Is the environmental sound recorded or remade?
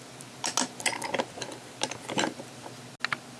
recorded